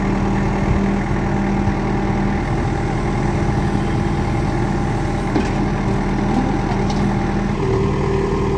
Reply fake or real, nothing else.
real